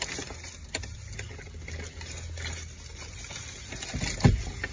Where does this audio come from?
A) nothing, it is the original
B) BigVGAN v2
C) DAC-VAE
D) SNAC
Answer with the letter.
A